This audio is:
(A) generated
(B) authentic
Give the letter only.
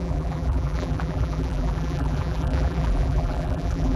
A